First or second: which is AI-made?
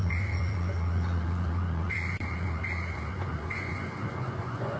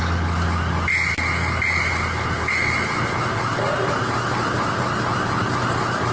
first